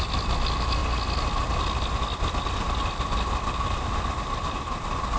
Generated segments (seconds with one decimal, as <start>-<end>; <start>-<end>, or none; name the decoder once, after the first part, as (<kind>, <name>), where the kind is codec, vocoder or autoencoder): none